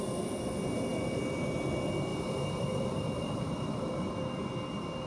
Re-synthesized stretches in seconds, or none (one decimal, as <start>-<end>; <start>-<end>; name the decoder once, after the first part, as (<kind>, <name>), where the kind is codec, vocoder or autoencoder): 2.1-5.1 (vocoder, BigVGAN v2)